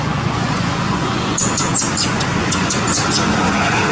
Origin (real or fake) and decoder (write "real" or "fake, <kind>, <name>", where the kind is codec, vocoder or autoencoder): fake, vocoder, Vocos